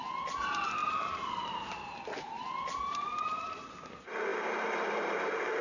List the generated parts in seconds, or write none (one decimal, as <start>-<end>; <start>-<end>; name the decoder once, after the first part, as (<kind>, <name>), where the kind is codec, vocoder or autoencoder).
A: 0.8-2.4 (vocoder, BigVGAN v2); 4.3-5.6

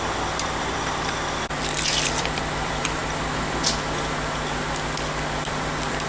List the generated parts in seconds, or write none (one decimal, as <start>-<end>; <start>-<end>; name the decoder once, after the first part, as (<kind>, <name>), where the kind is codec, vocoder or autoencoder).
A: 0.0-3.0 (vocoder, BigVGAN v2); 5.5-6.1

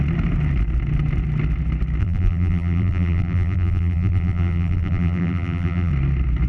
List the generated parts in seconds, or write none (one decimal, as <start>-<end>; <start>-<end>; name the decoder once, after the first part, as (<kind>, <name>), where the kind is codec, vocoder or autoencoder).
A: 2.0-5.9 (vocoder, BigVGAN v2)

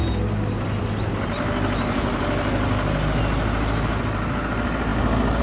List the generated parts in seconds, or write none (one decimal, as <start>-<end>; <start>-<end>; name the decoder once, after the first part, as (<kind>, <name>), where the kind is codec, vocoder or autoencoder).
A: none

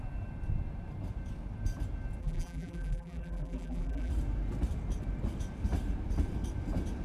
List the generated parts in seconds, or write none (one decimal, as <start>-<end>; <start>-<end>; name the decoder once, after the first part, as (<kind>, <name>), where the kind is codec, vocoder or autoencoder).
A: 2.2-4.1 (vocoder, BigVGAN v2)